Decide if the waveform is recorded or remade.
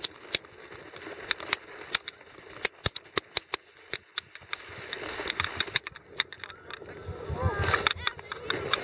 recorded